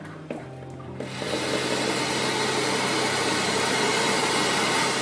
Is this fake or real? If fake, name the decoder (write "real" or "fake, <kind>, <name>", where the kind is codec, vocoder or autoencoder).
real